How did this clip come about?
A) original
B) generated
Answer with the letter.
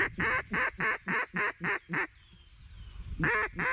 A